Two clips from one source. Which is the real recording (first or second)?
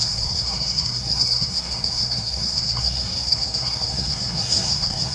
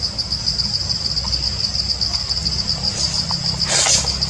second